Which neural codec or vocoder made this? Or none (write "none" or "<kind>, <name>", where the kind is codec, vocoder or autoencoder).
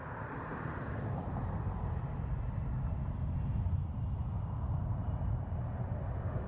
none